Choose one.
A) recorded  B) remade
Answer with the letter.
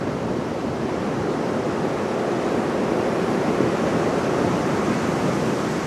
A